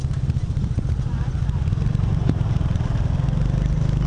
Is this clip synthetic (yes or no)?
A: no